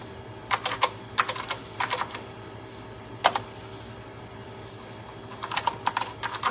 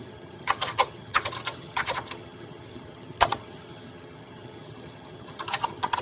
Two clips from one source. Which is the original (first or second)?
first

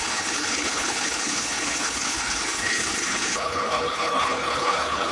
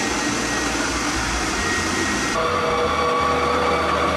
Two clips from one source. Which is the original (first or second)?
second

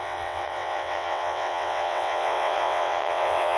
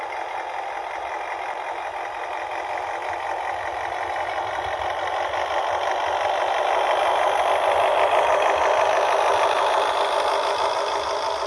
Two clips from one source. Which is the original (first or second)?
second